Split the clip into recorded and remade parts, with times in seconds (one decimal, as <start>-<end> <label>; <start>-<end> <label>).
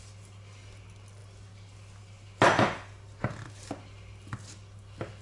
0.0-5.2 recorded